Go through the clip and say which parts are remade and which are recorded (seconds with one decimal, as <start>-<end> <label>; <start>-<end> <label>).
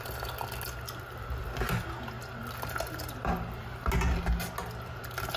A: 0.0-5.4 recorded